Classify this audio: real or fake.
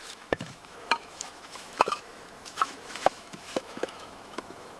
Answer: fake